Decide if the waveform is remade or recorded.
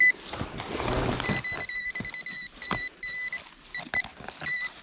recorded